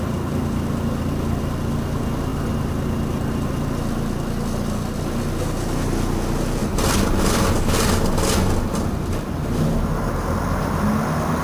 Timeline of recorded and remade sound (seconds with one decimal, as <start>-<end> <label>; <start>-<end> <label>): 0.0-2.3 recorded; 2.3-3.5 remade; 3.5-11.4 recorded